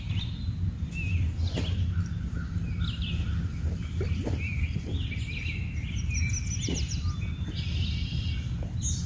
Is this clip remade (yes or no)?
no